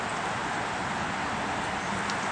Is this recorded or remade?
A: recorded